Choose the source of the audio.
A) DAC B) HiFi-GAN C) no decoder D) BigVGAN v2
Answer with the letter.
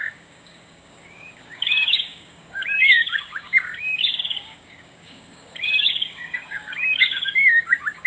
A